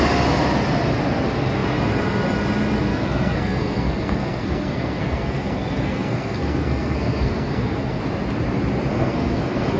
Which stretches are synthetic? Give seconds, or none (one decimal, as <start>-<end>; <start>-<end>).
2.9-8.0; 8.9-9.8